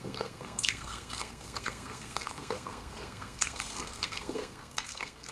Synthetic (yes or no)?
yes